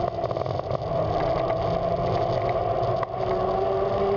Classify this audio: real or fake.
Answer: real